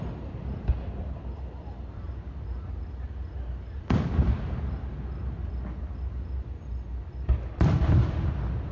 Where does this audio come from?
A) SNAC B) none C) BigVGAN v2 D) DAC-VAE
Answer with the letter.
B